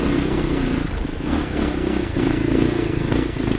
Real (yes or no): no